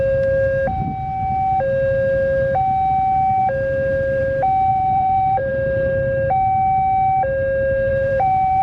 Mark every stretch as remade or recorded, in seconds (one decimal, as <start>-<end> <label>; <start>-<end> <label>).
0.0-4.7 recorded; 4.7-5.5 remade; 5.5-7.9 recorded; 7.9-8.6 remade